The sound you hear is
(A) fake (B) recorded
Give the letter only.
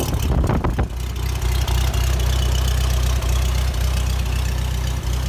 B